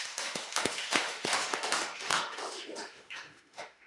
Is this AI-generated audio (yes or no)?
yes